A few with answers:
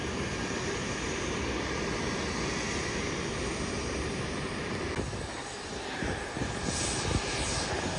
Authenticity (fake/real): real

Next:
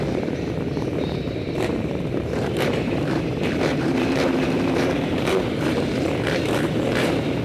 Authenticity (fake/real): fake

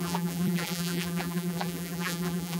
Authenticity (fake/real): fake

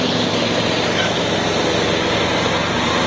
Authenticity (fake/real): fake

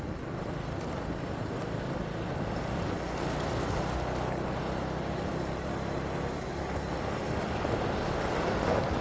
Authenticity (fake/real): real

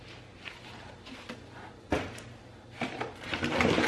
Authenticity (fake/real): real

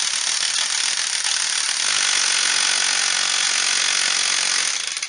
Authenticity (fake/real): real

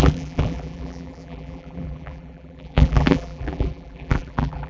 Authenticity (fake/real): fake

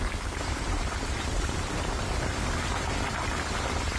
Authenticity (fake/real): fake